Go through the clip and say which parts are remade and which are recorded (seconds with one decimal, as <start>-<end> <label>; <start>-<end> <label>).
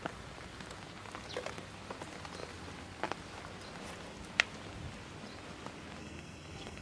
0.0-6.0 recorded; 6.0-6.8 remade